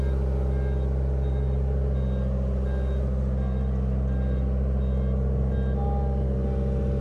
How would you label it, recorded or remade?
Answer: recorded